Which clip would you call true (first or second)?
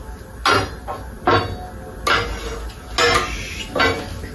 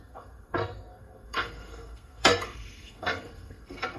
first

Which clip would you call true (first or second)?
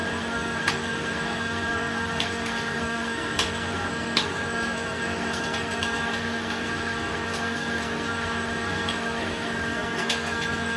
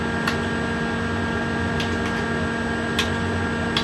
second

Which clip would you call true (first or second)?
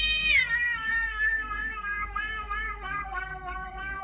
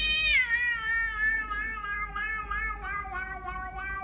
second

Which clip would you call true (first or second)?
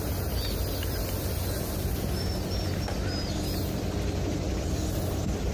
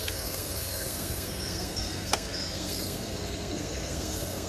first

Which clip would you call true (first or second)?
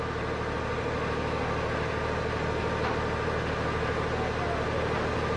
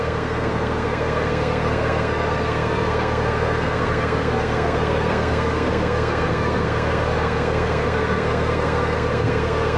first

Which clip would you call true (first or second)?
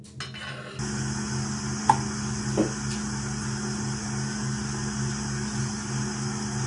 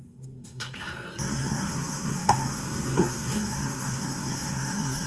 first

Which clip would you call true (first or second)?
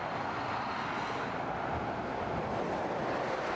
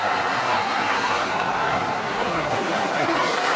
first